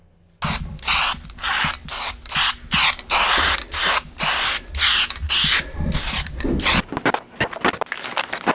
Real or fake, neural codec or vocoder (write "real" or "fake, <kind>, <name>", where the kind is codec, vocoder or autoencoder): real